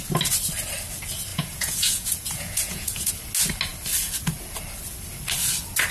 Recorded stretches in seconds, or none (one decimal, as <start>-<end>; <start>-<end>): 0.0-1.3; 3.1-5.9